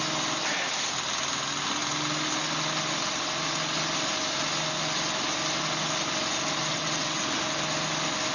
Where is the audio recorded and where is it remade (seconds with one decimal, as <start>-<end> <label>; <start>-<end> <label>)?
0.0-6.7 recorded; 6.7-7.2 remade; 7.2-8.3 recorded